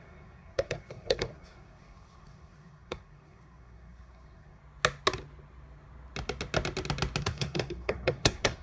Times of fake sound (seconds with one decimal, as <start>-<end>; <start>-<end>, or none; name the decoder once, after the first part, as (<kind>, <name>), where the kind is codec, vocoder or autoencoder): 0.0-4.6 (codec, SNAC); 7.2-8.6